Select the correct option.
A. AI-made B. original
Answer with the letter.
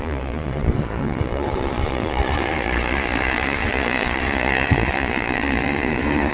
A